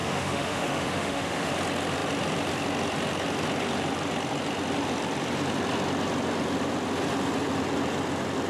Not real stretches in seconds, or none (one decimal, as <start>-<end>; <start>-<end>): 0.0-1.5

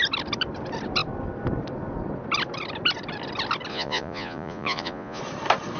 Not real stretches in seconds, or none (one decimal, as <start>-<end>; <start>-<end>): 3.7-5.2

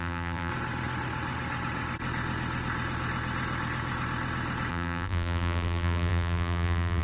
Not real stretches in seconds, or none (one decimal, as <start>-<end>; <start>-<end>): 0.0-0.5; 4.7-7.0

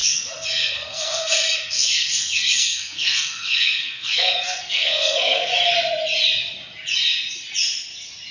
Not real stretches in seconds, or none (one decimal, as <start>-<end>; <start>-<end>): 0.0-5.5

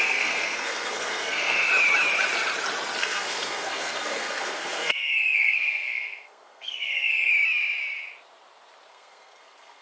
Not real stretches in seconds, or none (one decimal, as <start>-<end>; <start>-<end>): 0.0-1.7; 3.0-7.3; 8.9-9.8